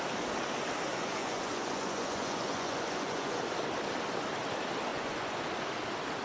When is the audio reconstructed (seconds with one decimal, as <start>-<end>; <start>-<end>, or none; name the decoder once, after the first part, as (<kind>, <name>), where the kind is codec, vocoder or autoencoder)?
0.9-3.4 (vocoder, Vocos); 4.9-5.4